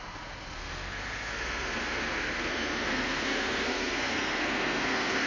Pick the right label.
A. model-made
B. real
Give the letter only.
A